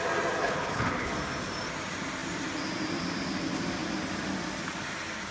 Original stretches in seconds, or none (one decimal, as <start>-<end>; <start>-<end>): 0.0-0.4; 1.1-5.3